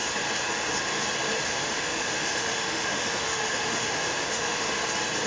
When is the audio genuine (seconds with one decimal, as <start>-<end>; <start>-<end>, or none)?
0.0-1.5; 4.7-5.3